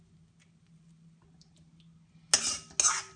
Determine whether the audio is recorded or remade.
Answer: recorded